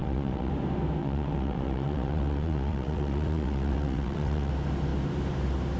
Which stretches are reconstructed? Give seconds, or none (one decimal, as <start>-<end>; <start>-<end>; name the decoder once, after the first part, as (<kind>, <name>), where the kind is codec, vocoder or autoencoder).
0.0-0.5 (vocoder, WaveNeXt); 1.0-4.5